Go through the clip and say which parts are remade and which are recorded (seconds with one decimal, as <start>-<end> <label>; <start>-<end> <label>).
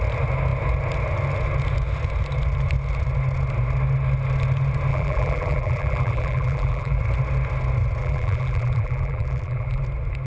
0.0-4.9 recorded; 4.9-7.0 remade; 7.0-8.0 recorded; 8.0-9.8 remade; 9.8-10.3 recorded